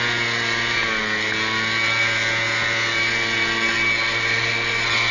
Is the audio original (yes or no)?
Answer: yes